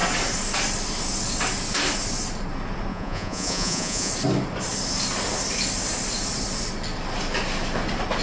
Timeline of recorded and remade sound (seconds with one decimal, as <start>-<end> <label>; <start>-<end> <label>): 0.0-2.9 recorded; 2.9-4.1 remade; 4.1-8.2 recorded